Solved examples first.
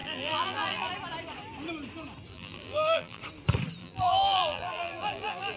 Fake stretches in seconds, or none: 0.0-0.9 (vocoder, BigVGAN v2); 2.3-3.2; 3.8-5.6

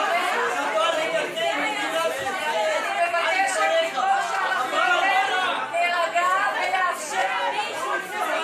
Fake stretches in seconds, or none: 7.2-7.9 (vocoder, Vocos)

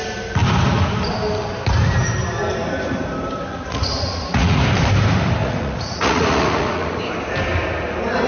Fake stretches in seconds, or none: 3.5-4.6 (vocoder, Vocos); 5.4-7.0

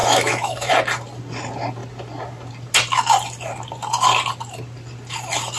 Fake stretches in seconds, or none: 0.0-0.7 (autoencoder, DAC-VAE)